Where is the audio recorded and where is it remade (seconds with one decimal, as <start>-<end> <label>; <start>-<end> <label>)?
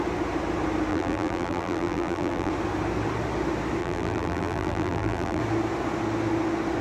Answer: 0.0-0.9 recorded; 0.9-2.5 remade; 2.5-3.8 recorded; 3.8-5.4 remade; 5.4-6.8 recorded